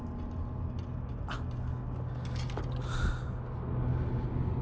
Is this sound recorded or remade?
recorded